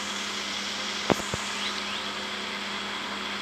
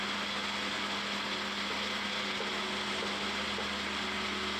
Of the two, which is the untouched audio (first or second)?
second